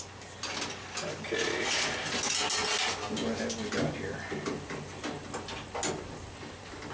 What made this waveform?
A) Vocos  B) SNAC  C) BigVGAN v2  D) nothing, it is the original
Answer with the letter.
D